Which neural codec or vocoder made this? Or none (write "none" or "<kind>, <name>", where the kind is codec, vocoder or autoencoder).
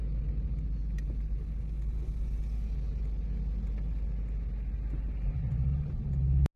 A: none